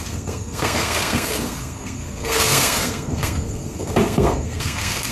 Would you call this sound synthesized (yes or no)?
yes